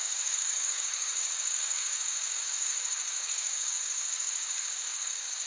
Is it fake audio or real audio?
fake